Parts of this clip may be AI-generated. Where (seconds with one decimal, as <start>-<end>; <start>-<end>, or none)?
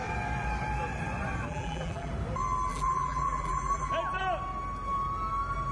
1.5-2.1; 2.7-3.9